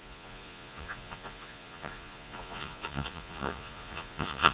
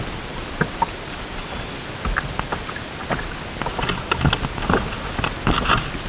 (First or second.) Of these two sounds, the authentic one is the second